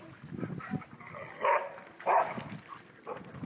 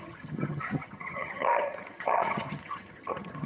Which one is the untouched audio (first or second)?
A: first